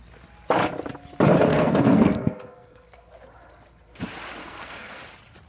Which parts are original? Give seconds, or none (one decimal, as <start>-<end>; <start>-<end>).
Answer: 0.0-1.5; 3.1-4.4; 5.0-5.5